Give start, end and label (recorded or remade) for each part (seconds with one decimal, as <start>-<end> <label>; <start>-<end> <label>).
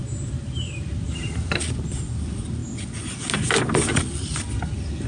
0.0-1.6 remade; 1.6-5.1 recorded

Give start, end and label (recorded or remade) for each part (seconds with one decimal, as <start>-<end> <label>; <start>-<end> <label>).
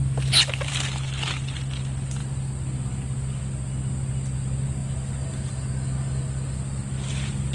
0.0-2.2 recorded; 2.2-3.4 remade; 3.4-4.8 recorded; 4.8-6.8 remade; 6.8-7.5 recorded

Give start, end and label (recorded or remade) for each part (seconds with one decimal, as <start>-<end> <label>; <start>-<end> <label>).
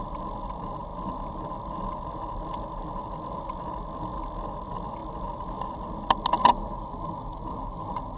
0.0-8.2 recorded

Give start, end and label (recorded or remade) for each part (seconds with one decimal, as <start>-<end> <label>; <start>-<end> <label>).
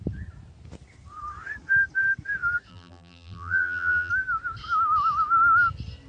0.0-2.7 recorded; 2.7-4.1 remade; 4.1-6.1 recorded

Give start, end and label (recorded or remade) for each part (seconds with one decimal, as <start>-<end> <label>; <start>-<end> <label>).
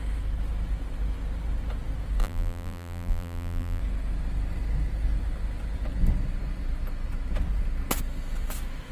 0.0-2.2 recorded; 2.2-3.8 remade; 3.8-8.9 recorded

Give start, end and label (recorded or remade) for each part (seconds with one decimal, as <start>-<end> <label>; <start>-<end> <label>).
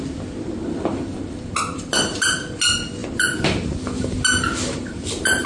0.0-1.7 recorded; 1.7-2.3 remade; 2.3-5.5 recorded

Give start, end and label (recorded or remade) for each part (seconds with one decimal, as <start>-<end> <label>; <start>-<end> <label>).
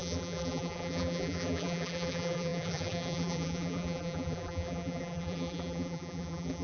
0.0-6.6 remade